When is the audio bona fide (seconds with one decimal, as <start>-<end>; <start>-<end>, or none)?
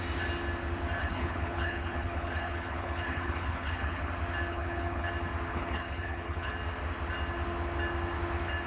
0.0-1.0; 4.1-4.5; 5.1-5.5; 6.5-8.7